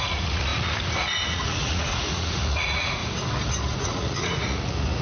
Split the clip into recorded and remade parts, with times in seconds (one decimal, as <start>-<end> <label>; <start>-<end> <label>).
0.0-3.0 remade; 3.0-3.8 recorded; 3.8-5.0 remade